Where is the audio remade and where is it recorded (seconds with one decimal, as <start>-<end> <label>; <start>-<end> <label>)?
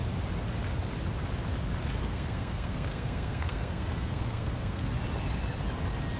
0.0-2.0 recorded; 2.0-4.9 remade; 4.9-6.2 recorded